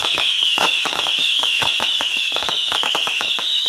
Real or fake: fake